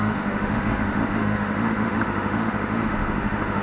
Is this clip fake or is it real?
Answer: fake